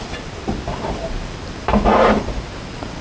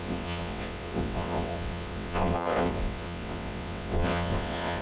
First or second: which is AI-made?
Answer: second